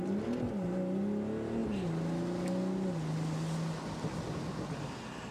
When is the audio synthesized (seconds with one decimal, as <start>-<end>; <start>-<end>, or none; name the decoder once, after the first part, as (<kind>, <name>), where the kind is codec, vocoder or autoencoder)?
none